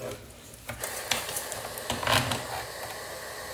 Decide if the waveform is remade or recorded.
recorded